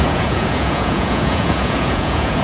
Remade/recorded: remade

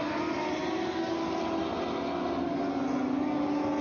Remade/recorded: recorded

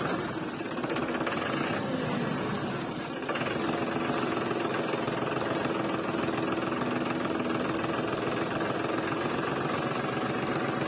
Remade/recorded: recorded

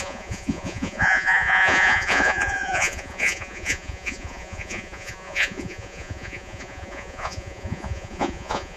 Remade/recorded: remade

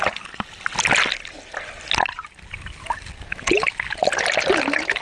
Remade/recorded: recorded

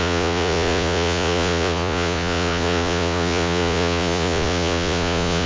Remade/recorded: remade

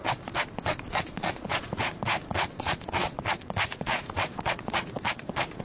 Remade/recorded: remade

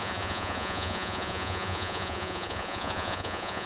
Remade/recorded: remade